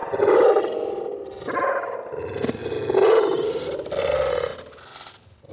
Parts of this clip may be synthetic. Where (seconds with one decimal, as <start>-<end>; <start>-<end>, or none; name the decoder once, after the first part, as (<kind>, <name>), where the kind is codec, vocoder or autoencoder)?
none